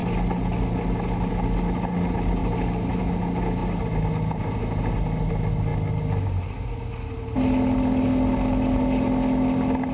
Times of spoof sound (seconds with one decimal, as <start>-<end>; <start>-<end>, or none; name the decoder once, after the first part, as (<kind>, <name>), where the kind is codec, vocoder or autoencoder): none